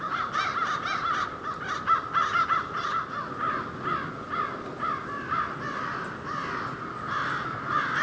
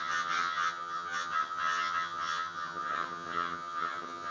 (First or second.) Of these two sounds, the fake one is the second